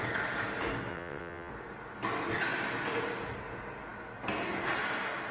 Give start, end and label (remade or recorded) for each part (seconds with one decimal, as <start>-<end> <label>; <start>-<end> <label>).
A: 0.0-0.9 recorded; 0.9-1.5 remade; 1.5-5.3 recorded